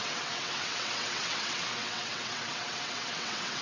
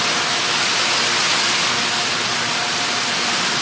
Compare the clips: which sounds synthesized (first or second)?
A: first